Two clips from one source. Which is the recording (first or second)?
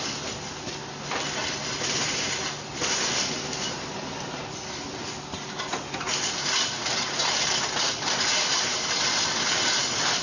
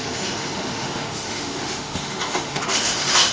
first